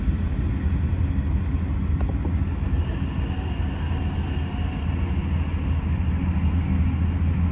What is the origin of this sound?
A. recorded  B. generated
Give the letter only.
A